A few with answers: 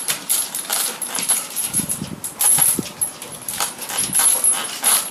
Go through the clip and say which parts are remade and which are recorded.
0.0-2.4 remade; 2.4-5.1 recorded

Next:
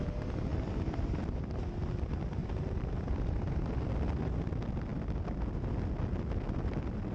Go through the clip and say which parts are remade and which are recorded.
0.0-0.5 recorded; 0.5-1.6 remade; 1.6-2.4 recorded; 2.4-3.4 remade; 3.4-7.1 recorded

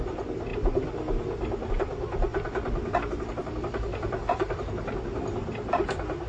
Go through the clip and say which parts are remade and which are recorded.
0.0-3.9 recorded; 3.9-5.1 remade; 5.1-6.3 recorded

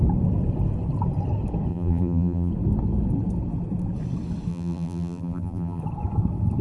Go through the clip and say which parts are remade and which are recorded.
0.0-1.7 recorded; 1.7-2.5 remade; 2.5-4.5 recorded; 4.5-5.8 remade; 5.8-6.6 recorded